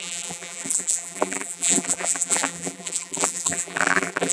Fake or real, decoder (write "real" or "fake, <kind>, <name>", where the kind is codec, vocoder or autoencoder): fake, vocoder, BigVGAN v2